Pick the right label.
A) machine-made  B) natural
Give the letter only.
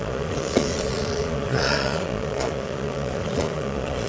A